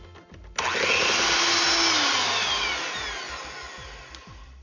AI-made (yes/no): no